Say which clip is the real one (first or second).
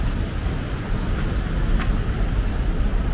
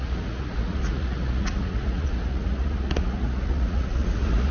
first